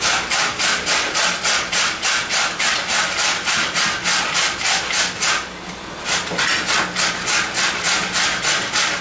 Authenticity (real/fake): real